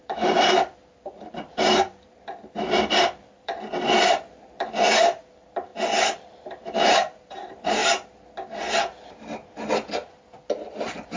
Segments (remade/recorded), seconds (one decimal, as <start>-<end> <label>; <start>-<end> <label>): 0.0-5.7 remade; 5.7-6.2 recorded; 6.2-7.8 remade; 7.8-10.7 recorded; 10.7-11.2 remade